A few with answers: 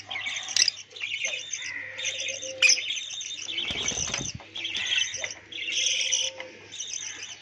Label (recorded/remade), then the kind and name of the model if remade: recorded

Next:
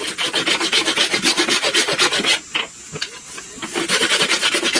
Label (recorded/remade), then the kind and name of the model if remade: recorded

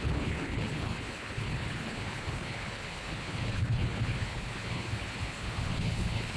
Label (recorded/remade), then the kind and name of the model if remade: remade, codec, HILCodec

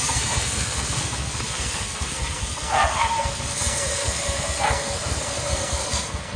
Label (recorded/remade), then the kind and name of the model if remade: remade, codec, SNAC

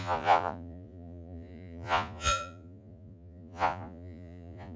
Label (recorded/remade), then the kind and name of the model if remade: remade, vocoder, Vocos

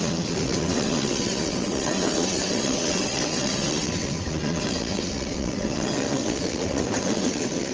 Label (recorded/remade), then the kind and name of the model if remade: remade, vocoder, WaveNeXt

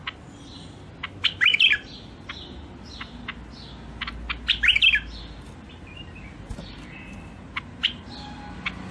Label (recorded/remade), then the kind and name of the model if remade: recorded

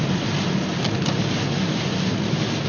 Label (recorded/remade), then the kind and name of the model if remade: recorded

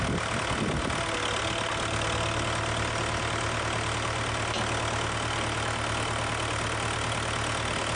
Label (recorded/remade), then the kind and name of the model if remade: recorded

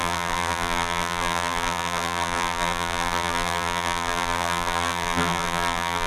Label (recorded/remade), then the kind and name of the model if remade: remade, vocoder, BigVGAN v2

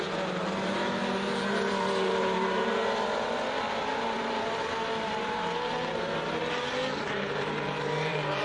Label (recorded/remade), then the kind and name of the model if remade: remade, vocoder, BigVGAN v2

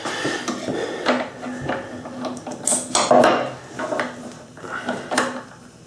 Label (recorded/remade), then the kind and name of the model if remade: recorded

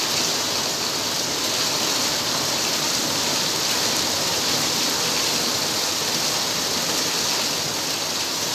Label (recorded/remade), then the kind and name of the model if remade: recorded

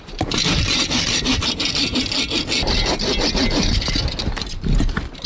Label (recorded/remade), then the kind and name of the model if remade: recorded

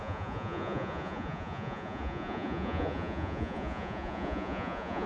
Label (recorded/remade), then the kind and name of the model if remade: remade, vocoder, Vocos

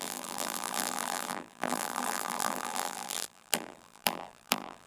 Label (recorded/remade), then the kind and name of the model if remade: remade, vocoder, BigVGAN v2